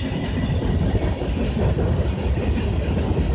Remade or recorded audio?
recorded